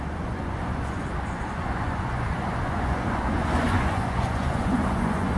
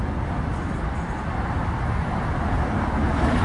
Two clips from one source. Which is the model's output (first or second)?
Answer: first